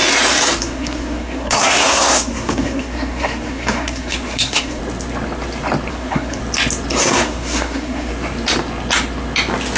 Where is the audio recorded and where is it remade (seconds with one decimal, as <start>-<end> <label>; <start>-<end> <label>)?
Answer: 0.0-0.6 recorded; 0.6-4.8 remade; 4.8-5.9 recorded; 5.9-6.4 remade; 6.4-7.0 recorded; 7.0-8.1 remade; 8.1-9.8 recorded